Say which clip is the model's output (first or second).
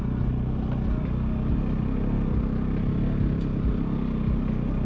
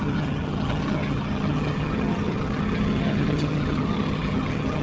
second